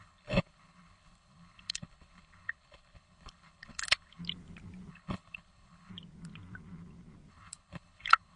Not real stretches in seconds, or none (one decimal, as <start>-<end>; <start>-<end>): 0.0-4.2; 4.9-5.9; 7.3-8.4